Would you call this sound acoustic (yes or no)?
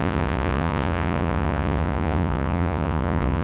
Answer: no